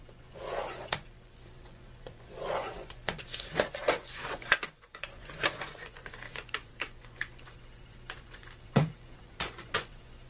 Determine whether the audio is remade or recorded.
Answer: remade